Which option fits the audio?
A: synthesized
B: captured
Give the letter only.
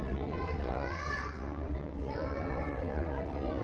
A